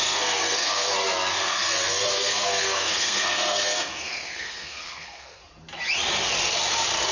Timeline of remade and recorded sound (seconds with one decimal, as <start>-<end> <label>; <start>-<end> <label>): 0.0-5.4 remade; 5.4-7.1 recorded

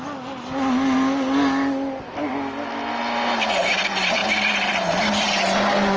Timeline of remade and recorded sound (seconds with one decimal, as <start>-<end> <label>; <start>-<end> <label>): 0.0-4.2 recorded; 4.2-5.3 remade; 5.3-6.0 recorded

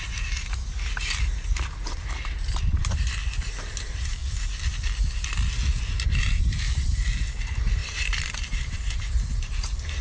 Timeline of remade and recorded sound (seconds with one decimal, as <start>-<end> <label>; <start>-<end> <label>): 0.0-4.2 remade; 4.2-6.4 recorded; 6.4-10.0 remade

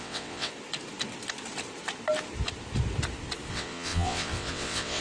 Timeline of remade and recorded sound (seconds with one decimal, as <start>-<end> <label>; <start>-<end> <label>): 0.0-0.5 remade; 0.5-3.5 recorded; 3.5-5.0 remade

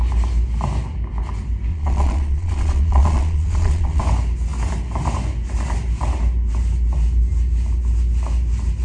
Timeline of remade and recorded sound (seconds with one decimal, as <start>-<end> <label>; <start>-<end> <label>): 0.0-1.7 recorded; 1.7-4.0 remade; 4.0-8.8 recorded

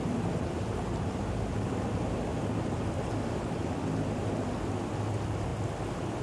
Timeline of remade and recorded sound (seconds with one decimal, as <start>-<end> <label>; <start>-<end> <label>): 0.0-6.2 recorded

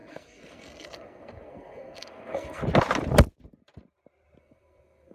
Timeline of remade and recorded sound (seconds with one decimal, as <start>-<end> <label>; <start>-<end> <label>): 0.0-2.6 remade; 2.6-4.4 recorded; 4.4-5.1 remade

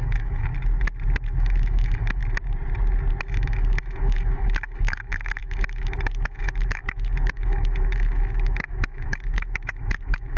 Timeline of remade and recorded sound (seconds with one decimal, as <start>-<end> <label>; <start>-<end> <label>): 0.0-0.5 remade; 0.5-1.4 recorded; 1.4-2.2 remade; 2.2-3.2 recorded; 3.2-10.4 remade